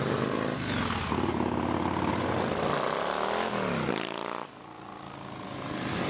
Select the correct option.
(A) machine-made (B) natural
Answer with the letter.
B